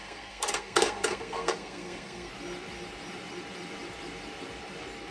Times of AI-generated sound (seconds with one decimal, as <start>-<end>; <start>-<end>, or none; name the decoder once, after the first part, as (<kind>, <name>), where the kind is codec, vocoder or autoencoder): 0.0-2.3 (codec, SNAC)

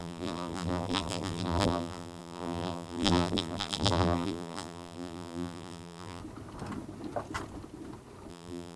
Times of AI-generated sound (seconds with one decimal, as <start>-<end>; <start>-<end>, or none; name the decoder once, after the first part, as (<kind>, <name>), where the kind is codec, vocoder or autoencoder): 0.0-6.2 (vocoder, BigVGAN v2); 8.3-8.8

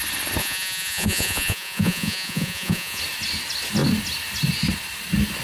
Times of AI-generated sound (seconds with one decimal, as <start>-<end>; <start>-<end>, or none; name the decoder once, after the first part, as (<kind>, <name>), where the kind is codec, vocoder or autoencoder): 0.4-3.0 (vocoder, Vocos)